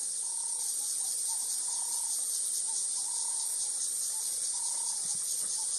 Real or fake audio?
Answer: real